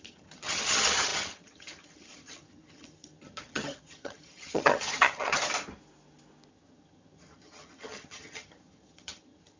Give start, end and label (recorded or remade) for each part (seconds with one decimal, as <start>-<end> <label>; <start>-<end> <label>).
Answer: 0.0-5.4 remade; 5.4-6.5 recorded; 6.5-9.6 remade